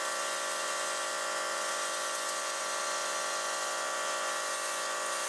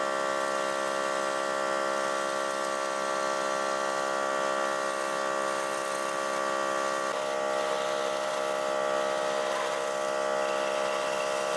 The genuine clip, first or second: second